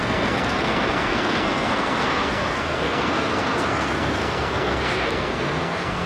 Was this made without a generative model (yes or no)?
no